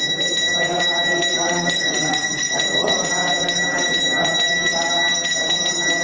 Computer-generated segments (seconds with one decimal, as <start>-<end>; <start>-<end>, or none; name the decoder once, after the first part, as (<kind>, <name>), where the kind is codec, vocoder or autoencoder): 1.3-3.1 (vocoder, Vocos)